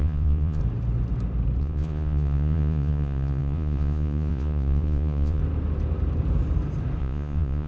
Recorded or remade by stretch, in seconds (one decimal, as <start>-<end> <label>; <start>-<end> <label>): 0.0-0.6 remade; 0.6-1.6 recorded; 1.6-5.4 remade; 5.4-7.0 recorded; 7.0-7.7 remade

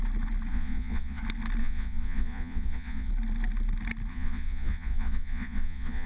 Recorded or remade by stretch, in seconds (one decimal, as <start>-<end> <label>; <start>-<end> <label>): 0.0-0.5 recorded; 0.5-1.2 remade; 1.2-1.6 recorded; 1.6-3.1 remade; 3.1-4.1 recorded; 4.1-6.1 remade

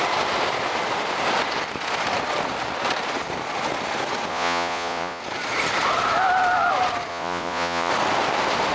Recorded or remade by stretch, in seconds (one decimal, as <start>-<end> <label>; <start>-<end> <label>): 0.0-4.3 recorded; 4.3-5.2 remade; 5.2-7.1 recorded; 7.1-7.9 remade; 7.9-8.7 recorded

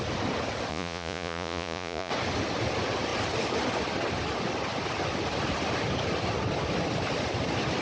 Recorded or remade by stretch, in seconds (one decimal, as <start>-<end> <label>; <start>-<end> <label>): 0.0-0.7 recorded; 0.7-2.1 remade; 2.1-7.8 recorded

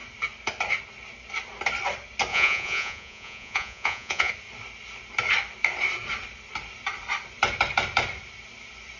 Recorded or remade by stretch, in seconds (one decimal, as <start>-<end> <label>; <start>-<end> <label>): 0.0-2.3 recorded; 2.3-4.3 remade; 4.3-9.0 recorded